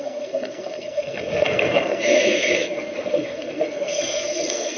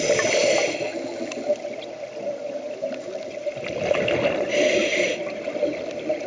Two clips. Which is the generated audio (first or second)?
first